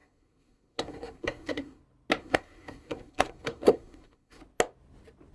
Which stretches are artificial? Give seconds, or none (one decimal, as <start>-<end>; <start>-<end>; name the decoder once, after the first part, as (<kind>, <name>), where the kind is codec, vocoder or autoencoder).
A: 0.0-1.8 (codec, SNAC); 2.2-4.4